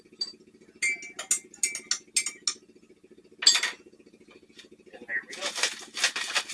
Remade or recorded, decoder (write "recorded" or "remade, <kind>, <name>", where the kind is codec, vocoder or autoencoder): recorded